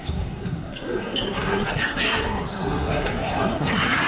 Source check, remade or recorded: remade